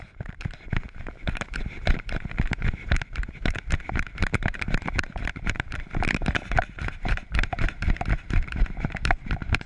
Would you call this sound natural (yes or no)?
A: no